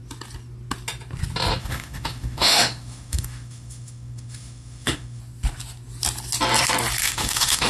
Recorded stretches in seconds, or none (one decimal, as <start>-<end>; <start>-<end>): 0.0-1.6; 5.2-7.0